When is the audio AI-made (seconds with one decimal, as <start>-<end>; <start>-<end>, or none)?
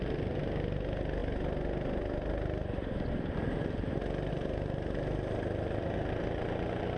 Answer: none